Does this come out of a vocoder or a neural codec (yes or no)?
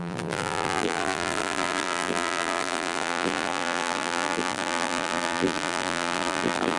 yes